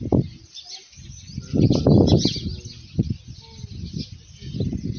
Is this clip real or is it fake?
real